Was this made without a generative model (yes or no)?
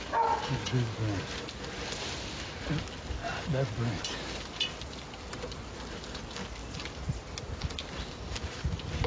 yes